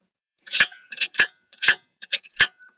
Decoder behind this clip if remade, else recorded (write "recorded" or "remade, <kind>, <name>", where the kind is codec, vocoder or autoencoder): remade, vocoder, Vocos